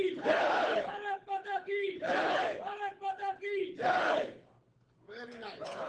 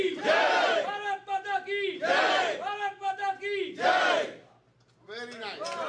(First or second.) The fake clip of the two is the first